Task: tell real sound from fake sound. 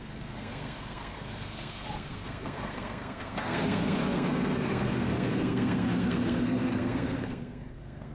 fake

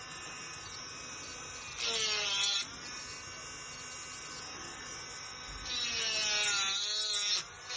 real